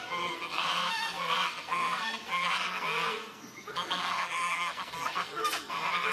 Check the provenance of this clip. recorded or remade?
remade